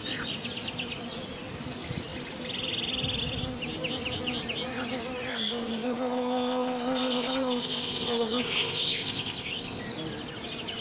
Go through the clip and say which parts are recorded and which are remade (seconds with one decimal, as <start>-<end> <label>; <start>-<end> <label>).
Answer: 0.0-5.3 recorded; 5.3-9.8 remade; 9.8-10.8 recorded